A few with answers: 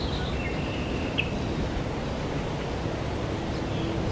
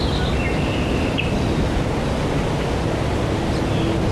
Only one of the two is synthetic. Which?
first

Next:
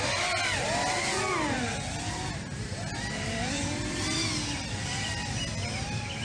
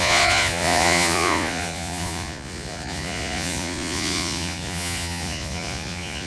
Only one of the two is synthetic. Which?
second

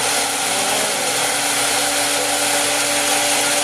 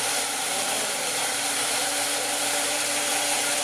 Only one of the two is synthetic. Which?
second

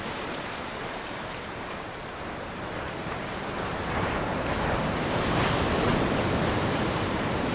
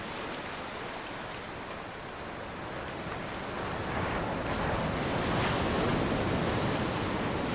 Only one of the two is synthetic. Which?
first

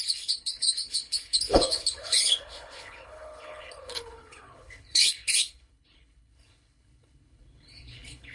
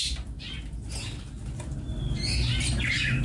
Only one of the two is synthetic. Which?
first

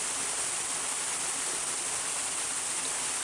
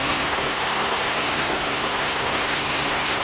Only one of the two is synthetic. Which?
second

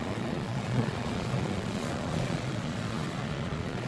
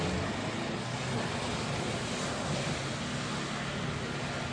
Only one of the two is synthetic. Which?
first